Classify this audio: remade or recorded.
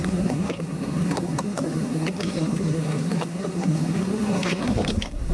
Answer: remade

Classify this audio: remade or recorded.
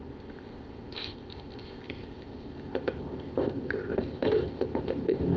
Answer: remade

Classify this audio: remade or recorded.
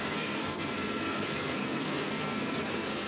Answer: remade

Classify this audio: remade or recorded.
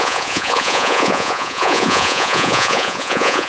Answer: remade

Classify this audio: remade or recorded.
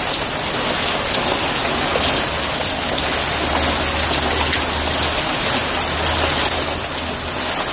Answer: recorded